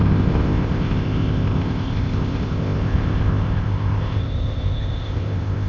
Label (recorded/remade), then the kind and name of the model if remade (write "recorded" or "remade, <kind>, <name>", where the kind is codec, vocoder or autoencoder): remade, codec, ZipCodec